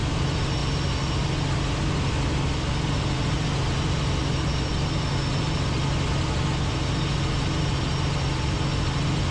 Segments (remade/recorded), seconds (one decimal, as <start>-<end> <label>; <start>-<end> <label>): 0.0-9.3 recorded